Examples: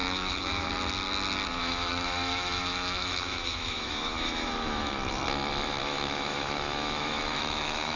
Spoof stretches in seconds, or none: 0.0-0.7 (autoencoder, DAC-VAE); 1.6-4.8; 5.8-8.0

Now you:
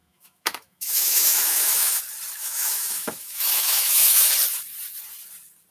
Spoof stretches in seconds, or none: 0.0-2.0 (autoencoder, DAC-VAE); 2.4-4.3

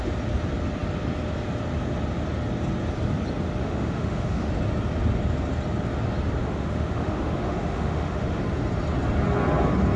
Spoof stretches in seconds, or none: 3.6-4.5 (autoencoder, DAC-VAE); 6.4-8.4